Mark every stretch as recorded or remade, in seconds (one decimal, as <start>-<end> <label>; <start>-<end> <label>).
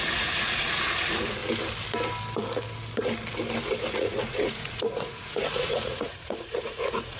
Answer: 0.0-1.4 remade; 1.4-3.9 recorded; 3.9-7.2 remade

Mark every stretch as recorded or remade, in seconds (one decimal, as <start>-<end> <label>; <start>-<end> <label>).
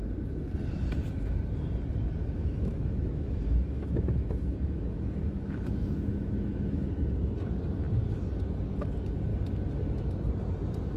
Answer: 0.0-2.2 recorded; 2.2-6.9 remade; 6.9-11.0 recorded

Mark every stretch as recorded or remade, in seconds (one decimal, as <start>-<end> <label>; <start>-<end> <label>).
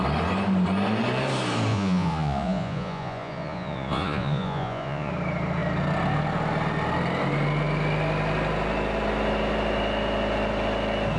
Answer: 0.0-1.7 recorded; 1.7-5.1 remade; 5.1-11.2 recorded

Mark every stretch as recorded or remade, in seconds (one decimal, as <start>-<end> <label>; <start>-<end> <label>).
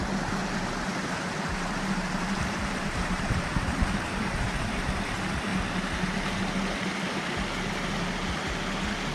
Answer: 0.0-0.4 recorded; 0.4-4.6 remade; 4.6-9.1 recorded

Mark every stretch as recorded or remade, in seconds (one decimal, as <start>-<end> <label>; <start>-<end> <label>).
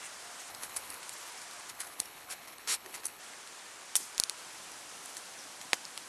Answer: 0.0-0.5 recorded; 0.5-1.0 remade; 1.0-1.7 recorded; 1.7-3.2 remade; 3.2-6.1 recorded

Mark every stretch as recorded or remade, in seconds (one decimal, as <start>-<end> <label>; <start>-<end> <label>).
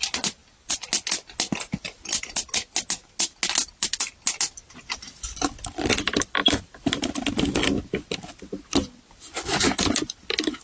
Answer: 0.0-3.6 recorded; 3.6-4.2 remade; 4.2-5.9 recorded; 5.9-7.5 remade; 7.5-10.6 recorded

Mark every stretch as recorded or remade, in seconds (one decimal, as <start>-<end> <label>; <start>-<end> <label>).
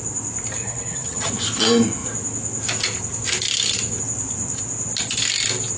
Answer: 0.0-0.6 recorded; 0.6-1.3 remade; 1.3-5.8 recorded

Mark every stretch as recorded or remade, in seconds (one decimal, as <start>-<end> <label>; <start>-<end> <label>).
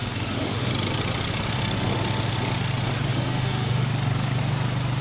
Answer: 0.0-0.7 remade; 0.7-3.1 recorded; 3.1-3.9 remade; 3.9-5.0 recorded